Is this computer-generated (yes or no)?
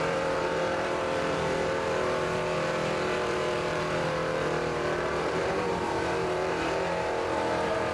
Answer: yes